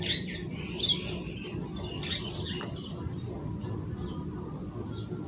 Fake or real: real